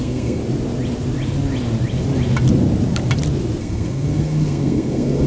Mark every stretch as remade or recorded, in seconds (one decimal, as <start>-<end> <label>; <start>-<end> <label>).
0.0-0.4 remade; 0.4-3.6 recorded; 3.6-5.3 remade